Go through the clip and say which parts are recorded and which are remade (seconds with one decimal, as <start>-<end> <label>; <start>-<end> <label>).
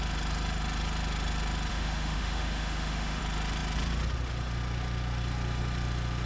0.0-1.7 recorded; 1.7-3.2 remade; 3.2-6.3 recorded